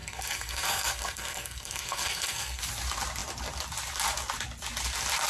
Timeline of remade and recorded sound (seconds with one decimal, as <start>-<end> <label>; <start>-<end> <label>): 0.0-2.6 remade; 2.6-5.3 recorded